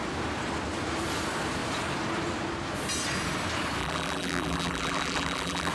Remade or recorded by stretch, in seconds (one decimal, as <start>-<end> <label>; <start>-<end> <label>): 0.0-3.8 recorded; 3.8-5.7 remade